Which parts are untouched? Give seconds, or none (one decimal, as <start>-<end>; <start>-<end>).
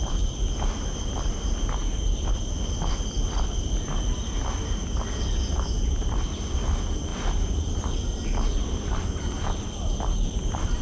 0.0-10.8